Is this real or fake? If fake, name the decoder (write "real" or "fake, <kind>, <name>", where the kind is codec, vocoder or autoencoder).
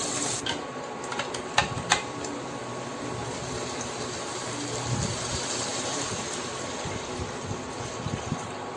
real